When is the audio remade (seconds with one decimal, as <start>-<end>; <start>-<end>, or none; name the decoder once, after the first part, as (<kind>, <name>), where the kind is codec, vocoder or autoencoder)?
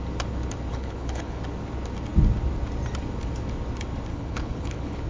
0.7-1.4 (codec, HILCodec); 4.1-5.1